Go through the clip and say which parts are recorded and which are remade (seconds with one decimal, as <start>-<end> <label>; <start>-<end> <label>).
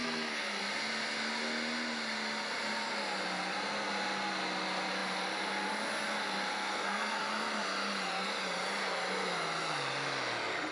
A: 0.0-0.6 remade; 0.6-6.5 recorded; 6.5-7.2 remade; 7.2-10.7 recorded